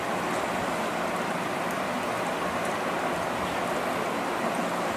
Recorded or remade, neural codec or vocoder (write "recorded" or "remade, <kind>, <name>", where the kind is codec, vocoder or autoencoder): recorded